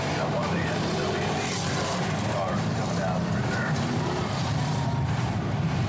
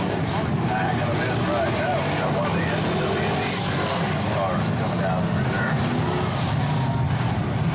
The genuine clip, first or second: second